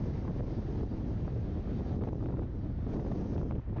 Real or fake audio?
real